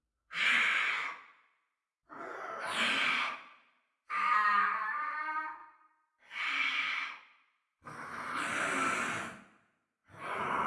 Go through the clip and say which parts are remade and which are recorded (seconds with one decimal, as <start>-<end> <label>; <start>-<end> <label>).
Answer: 0.0-10.0 recorded; 10.0-10.7 remade